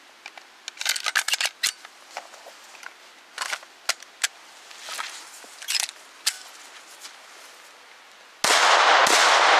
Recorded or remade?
recorded